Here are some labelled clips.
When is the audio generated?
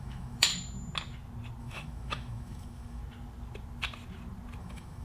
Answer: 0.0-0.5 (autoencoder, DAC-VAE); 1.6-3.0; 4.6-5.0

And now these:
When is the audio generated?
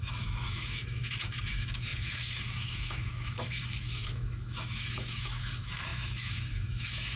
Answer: 0.0-7.2 (autoencoder, DAC-VAE)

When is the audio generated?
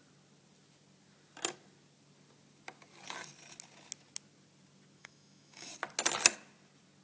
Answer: 5.0-5.7 (autoencoder, DAC-VAE)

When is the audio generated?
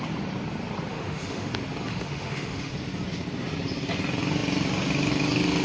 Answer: 0.9-1.5 (autoencoder, DAC-VAE); 1.9-2.7